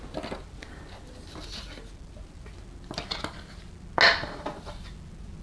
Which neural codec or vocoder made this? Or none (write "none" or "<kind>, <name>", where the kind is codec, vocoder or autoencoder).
none